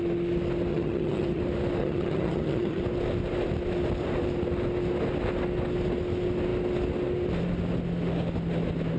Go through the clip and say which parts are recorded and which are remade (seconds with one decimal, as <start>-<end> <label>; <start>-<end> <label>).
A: 0.0-0.7 recorded; 0.7-1.4 remade; 1.4-1.8 recorded; 1.8-2.8 remade; 2.8-9.0 recorded